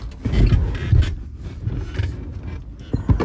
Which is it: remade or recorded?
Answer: recorded